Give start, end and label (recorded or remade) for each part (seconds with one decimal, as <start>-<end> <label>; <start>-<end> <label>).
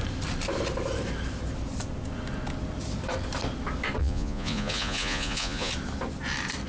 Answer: 0.0-4.0 recorded; 4.0-5.7 remade; 5.7-6.7 recorded